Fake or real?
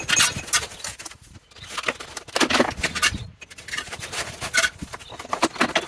real